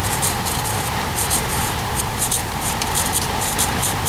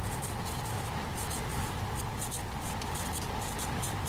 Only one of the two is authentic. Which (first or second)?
second